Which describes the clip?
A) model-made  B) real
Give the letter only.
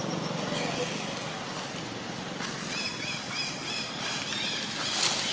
B